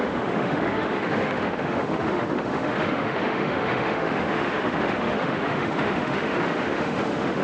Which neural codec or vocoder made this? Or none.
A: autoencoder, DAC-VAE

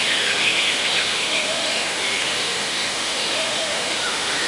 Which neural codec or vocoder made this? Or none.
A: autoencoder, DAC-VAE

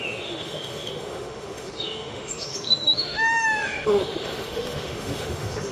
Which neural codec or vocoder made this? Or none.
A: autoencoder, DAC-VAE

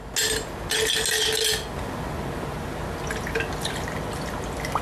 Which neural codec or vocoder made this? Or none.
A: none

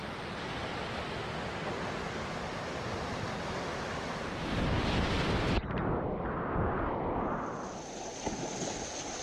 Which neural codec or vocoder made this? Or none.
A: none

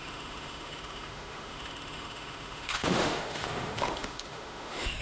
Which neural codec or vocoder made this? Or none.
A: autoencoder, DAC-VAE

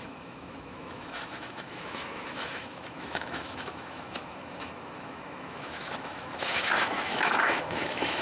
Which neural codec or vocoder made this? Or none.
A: autoencoder, DAC-VAE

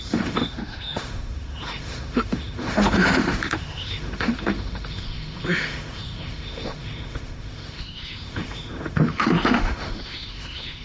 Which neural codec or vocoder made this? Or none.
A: autoencoder, DAC-VAE